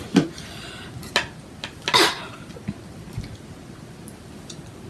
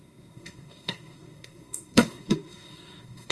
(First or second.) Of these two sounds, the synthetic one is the second